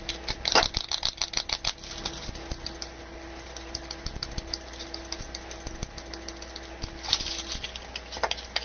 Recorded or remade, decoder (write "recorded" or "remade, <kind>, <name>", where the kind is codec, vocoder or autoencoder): recorded